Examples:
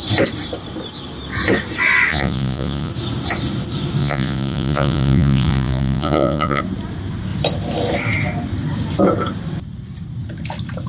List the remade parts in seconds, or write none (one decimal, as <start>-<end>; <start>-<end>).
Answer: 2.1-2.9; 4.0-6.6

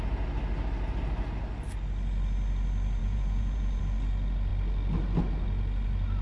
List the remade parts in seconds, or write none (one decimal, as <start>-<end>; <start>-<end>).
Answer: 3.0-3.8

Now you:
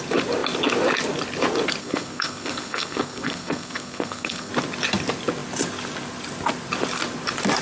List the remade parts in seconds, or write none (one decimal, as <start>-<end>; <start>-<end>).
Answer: 1.8-4.5

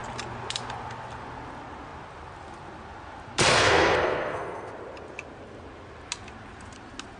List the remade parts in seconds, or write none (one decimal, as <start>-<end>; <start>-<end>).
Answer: 3.5-4.7

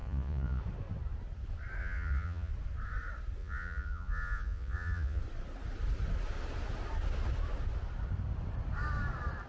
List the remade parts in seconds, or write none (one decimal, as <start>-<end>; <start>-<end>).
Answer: 0.0-0.6; 1.8-2.5; 3.4-5.2